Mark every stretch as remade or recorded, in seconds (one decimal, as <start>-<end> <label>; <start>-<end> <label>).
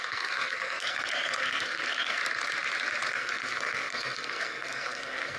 0.0-2.2 remade; 2.2-3.1 recorded; 3.1-5.4 remade